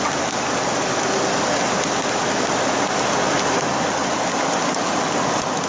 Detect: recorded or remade recorded